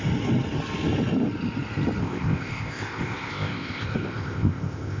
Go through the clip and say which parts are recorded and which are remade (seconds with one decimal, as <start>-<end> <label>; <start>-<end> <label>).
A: 0.0-2.0 recorded; 2.0-5.0 remade